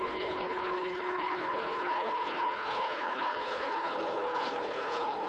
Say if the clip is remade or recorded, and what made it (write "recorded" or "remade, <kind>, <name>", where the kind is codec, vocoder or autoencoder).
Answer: remade, codec, HILCodec